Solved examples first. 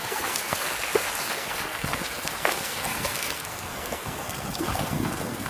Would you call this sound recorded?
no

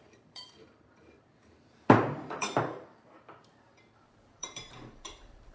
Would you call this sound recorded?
no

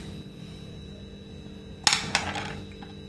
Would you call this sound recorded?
yes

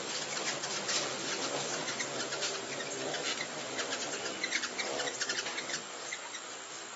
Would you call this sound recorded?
yes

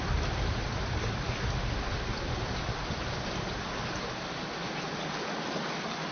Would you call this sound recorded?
yes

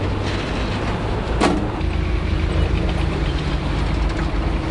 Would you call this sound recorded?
yes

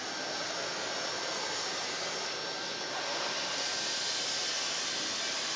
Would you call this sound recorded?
yes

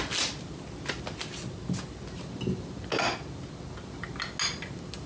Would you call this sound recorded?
yes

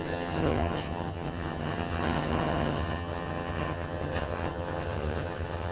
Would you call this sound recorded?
no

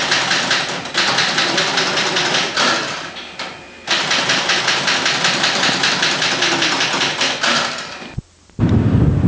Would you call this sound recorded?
yes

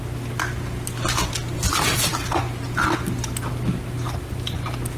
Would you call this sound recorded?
yes